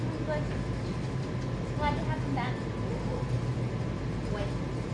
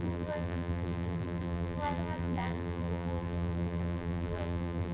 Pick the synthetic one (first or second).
second